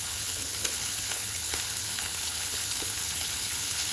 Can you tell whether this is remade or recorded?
remade